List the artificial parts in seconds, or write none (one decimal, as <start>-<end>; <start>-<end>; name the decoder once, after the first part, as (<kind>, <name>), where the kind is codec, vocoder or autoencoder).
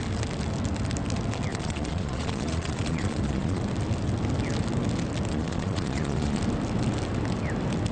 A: 1.5-3.6 (vocoder, Vocos); 5.3-6.4